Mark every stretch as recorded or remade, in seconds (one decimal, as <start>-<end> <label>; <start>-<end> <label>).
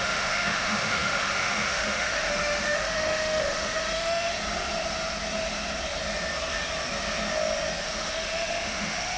0.0-4.3 remade; 4.3-7.8 recorded; 7.8-9.2 remade